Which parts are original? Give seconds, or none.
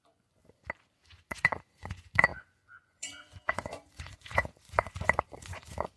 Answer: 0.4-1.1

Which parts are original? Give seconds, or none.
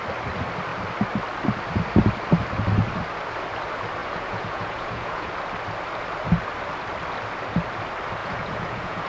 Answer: 0.0-4.0; 5.3-8.2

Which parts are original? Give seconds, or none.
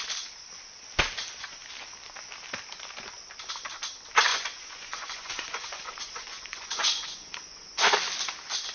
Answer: 0.0-4.3; 7.9-8.7